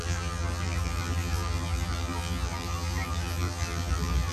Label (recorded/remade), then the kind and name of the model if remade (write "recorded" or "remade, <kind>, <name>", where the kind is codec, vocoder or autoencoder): remade, vocoder, BigVGAN v2